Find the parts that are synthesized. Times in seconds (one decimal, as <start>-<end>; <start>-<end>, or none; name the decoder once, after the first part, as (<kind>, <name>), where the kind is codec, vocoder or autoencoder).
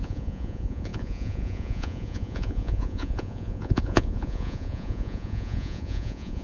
0.0-6.4 (vocoder, Vocos)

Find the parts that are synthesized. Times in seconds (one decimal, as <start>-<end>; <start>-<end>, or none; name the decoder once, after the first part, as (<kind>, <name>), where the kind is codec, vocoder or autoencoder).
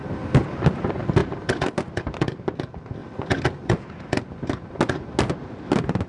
none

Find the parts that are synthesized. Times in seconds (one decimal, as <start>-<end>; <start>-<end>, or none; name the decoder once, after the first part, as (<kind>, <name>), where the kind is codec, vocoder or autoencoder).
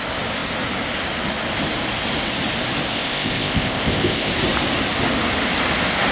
2.9-4.3 (codec, ZipCodec)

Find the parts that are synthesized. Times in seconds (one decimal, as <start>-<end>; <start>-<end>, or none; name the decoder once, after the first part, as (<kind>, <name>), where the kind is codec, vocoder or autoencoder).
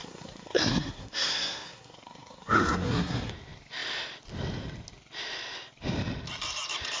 0.0-3.3 (codec, SNAC)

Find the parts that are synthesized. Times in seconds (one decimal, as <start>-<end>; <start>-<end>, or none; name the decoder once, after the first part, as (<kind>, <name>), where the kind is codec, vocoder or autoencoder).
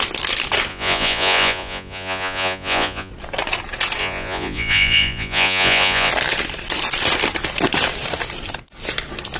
0.7-3.1 (vocoder, Vocos); 4.0-6.1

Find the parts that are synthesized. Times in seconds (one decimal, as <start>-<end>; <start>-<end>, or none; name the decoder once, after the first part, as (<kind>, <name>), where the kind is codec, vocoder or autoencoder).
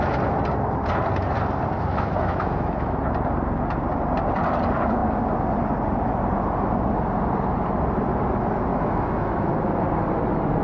1.9-2.9 (autoencoder, DAC-VAE); 8.7-9.5